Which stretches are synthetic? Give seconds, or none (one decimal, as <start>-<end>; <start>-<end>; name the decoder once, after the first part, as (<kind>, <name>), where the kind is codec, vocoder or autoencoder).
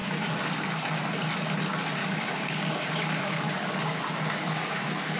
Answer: 0.0-0.6 (codec, DAC); 2.0-5.2